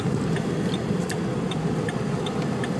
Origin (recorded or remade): recorded